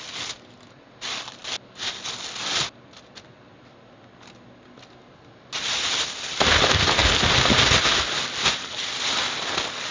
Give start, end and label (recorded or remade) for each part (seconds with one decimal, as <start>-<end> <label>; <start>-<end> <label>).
0.0-9.9 recorded